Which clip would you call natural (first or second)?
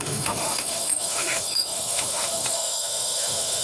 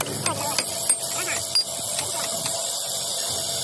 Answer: second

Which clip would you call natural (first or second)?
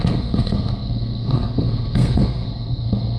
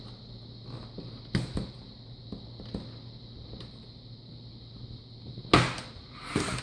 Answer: second